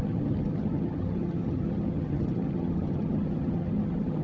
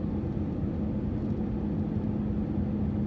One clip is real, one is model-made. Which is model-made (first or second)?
first